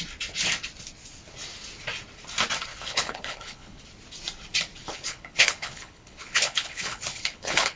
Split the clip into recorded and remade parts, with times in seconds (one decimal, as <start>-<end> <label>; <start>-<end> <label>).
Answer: 0.0-2.7 recorded; 2.7-3.8 remade; 3.8-4.8 recorded; 4.8-7.8 remade